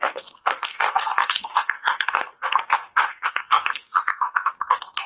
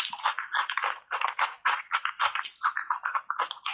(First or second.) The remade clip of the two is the first